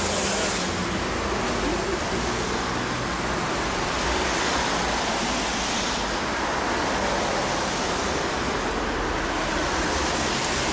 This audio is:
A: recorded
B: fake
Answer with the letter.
A